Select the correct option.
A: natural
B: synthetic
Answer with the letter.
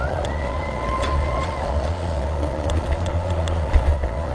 B